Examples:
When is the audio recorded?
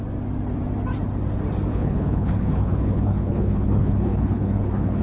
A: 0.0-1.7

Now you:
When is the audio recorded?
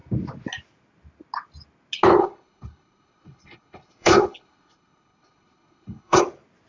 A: 0.0-2.2; 6.2-6.7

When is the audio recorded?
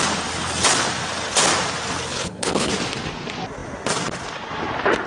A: 0.0-2.1; 2.7-5.1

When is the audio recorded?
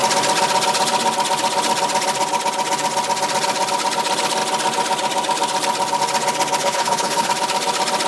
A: 0.0-6.6; 7.3-8.1